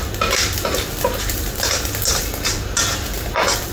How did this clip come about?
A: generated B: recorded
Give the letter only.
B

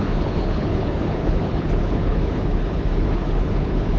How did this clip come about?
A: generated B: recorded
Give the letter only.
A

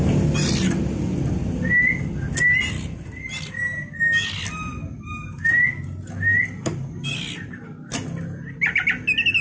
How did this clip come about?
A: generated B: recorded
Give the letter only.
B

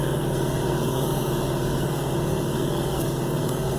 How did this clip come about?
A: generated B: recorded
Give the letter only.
A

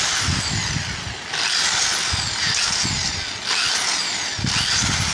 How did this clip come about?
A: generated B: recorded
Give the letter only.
B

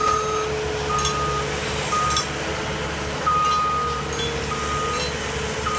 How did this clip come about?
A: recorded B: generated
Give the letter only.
A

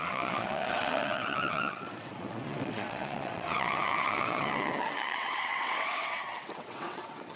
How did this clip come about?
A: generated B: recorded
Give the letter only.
A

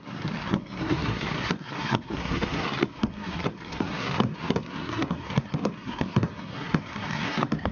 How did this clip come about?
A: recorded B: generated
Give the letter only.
B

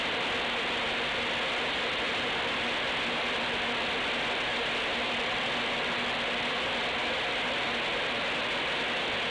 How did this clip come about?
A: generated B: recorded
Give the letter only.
B